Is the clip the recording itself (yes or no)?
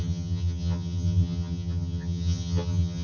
no